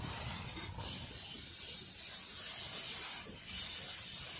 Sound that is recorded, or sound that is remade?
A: recorded